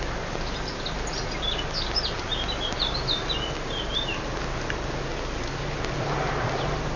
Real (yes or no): yes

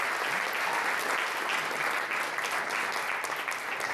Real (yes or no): yes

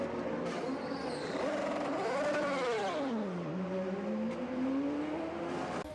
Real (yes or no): yes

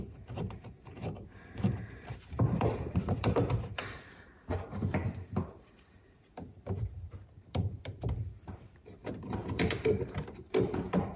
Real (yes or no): no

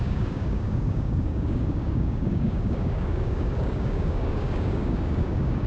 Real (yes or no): no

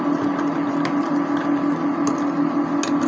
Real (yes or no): yes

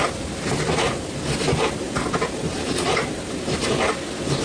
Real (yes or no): yes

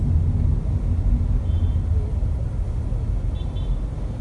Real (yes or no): yes